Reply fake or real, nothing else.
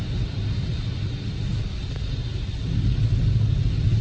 real